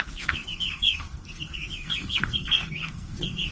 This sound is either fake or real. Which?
fake